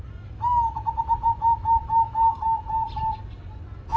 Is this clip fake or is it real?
real